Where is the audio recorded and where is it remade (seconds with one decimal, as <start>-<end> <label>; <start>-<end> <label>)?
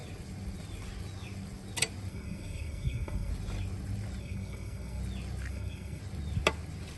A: 0.0-2.1 recorded; 2.1-3.3 remade; 3.3-4.2 recorded; 4.2-5.0 remade; 5.0-5.5 recorded; 5.5-6.0 remade; 6.0-7.0 recorded